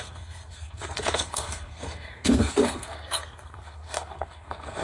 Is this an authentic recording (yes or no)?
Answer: no